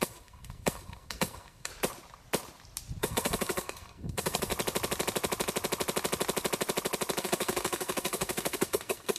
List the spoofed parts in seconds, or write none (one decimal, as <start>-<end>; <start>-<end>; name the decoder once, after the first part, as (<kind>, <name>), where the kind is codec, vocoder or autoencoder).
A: 0.0-1.7 (codec, SNAC); 3.0-4.5; 7.2-9.2